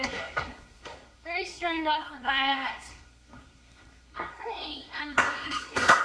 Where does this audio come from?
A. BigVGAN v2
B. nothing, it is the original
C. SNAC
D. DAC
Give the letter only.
C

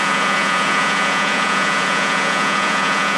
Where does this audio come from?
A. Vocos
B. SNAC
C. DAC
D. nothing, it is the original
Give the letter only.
A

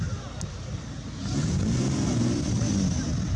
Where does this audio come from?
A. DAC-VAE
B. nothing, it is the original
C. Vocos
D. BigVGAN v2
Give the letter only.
B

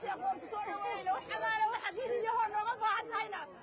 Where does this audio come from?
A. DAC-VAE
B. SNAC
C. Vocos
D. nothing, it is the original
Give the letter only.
D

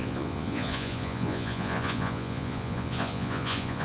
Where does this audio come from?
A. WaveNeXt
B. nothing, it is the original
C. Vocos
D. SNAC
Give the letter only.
C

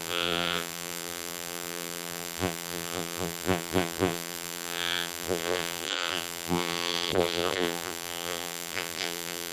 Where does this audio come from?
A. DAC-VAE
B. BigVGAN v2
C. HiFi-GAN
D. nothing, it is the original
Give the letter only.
B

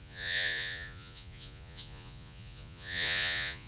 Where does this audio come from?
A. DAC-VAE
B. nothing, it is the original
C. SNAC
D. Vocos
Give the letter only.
D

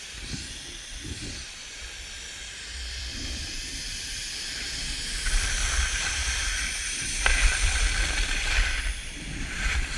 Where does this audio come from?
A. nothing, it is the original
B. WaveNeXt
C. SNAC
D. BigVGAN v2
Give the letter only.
D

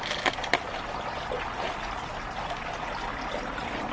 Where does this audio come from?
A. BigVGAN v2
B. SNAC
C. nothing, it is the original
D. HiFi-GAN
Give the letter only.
C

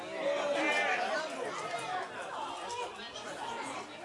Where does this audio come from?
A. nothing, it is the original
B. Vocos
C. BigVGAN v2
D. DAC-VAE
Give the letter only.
A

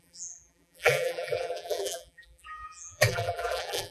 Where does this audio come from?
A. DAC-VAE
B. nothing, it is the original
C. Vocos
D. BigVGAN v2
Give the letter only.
D